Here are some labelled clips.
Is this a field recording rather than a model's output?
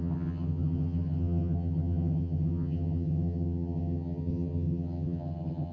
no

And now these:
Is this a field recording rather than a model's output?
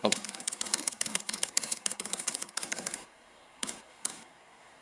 no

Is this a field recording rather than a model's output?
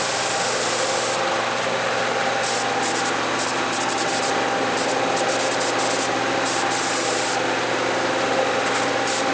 yes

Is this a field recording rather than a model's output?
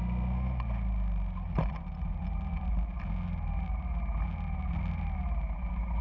yes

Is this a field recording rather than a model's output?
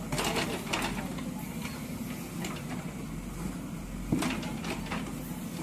yes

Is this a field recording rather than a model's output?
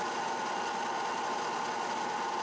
yes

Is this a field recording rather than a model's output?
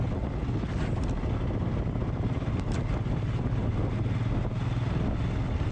yes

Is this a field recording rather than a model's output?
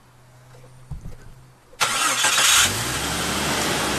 yes